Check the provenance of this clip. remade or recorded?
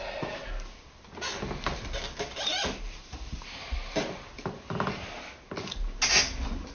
recorded